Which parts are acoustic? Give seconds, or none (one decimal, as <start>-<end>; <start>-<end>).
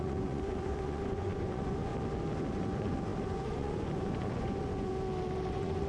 1.9-2.5; 4.9-5.5